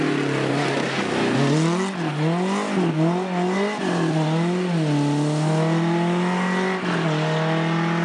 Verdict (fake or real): real